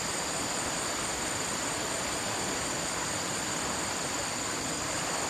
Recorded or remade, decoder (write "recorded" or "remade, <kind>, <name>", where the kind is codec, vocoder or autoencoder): recorded